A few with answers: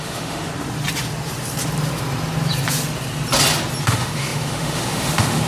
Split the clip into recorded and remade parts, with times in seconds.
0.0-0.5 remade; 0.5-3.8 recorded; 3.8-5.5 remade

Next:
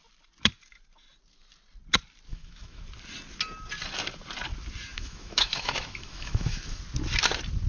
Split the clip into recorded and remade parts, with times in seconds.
0.0-2.3 recorded; 2.3-2.8 remade; 2.8-4.9 recorded; 4.9-6.8 remade; 6.8-7.7 recorded

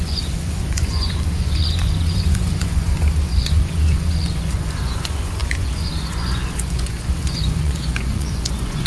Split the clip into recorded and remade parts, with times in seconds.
0.0-8.9 remade

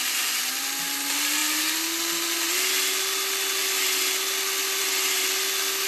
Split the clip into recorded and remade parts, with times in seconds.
0.0-5.9 recorded

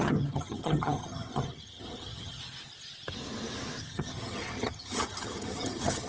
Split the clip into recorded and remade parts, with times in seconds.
0.0-2.4 remade; 2.4-3.8 recorded; 3.8-6.1 remade

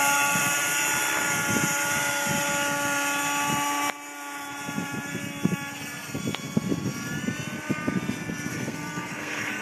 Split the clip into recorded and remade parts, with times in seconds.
0.0-8.5 recorded; 8.5-9.6 remade